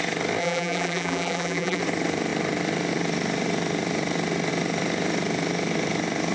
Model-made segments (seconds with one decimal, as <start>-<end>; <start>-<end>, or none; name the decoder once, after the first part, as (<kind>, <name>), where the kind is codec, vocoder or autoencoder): 0.4-1.8 (vocoder, BigVGAN v2)